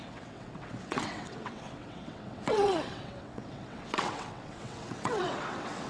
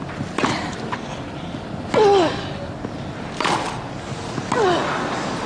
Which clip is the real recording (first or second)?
second